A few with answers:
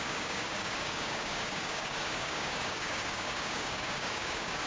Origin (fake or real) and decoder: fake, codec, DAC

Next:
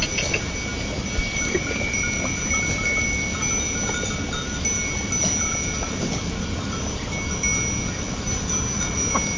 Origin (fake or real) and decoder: real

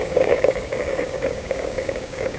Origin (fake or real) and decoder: fake, codec, DAC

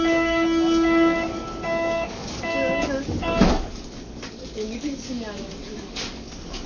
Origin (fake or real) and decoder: fake, codec, DAC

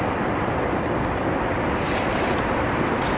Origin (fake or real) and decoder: real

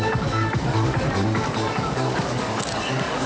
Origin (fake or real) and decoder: fake, codec, DAC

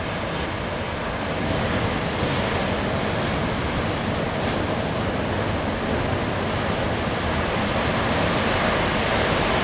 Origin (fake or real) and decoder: real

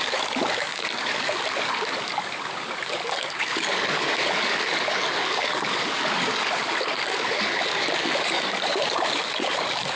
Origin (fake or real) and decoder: fake, codec, DAC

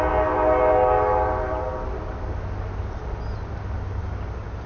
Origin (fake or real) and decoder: real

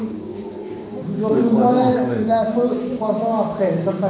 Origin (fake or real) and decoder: fake, codec, DAC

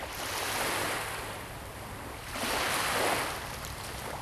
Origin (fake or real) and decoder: real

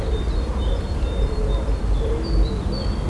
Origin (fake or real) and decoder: real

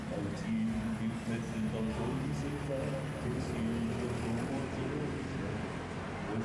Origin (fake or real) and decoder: real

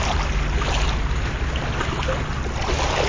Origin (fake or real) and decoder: real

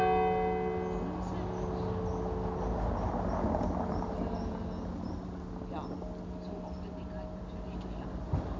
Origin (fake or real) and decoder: real